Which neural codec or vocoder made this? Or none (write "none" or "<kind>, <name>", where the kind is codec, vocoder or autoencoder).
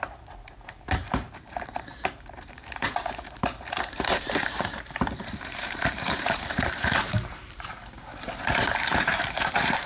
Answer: vocoder, BigVGAN v2